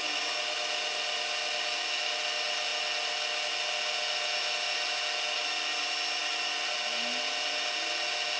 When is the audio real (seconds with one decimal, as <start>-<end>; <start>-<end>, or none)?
0.0-8.4